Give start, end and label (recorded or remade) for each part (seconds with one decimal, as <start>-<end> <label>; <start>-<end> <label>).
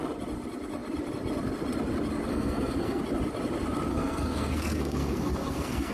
0.0-2.3 recorded; 2.3-3.0 remade; 3.0-3.9 recorded; 3.9-5.9 remade